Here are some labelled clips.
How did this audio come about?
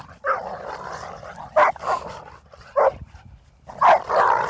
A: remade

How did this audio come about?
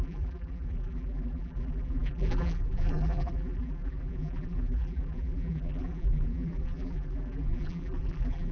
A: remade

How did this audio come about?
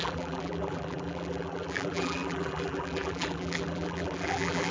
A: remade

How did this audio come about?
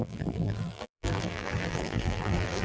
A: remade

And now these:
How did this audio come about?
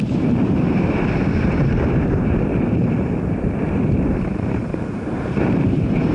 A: remade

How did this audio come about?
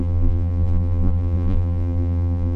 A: remade